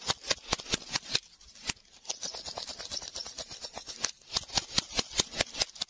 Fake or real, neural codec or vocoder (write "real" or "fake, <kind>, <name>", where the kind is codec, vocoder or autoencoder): real